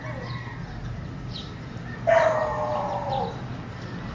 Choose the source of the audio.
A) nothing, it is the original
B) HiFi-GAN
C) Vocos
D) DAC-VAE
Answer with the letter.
A